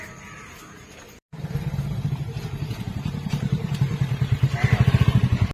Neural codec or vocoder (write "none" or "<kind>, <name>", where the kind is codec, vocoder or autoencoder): vocoder, BigVGAN v2